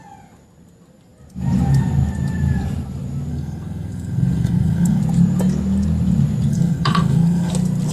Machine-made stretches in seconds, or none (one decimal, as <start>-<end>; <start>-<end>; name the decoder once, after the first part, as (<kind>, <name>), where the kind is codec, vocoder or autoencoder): 3.3-5.0 (codec, SNAC); 6.5-7.5